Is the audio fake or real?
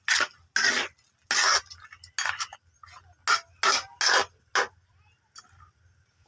real